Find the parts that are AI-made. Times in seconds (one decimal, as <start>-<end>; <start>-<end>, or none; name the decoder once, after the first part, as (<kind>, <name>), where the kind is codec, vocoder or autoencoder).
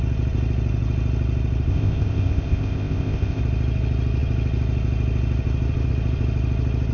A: 1.7-3.4 (codec, ZipCodec)